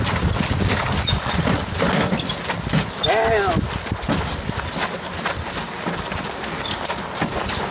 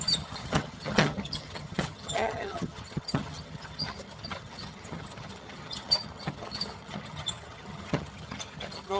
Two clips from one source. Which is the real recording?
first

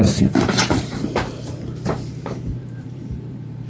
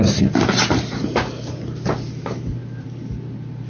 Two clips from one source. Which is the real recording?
second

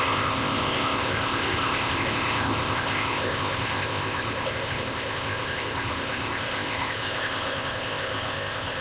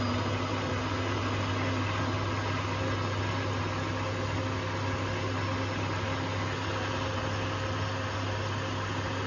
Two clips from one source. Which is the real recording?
second